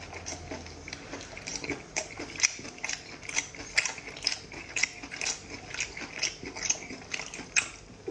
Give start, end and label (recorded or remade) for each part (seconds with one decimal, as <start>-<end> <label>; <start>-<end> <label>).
0.0-8.1 recorded